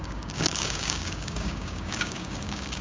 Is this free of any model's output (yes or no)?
no